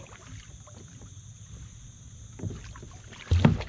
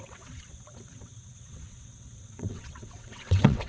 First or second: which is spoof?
second